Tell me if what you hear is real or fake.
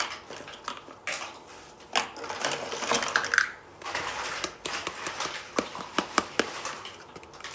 real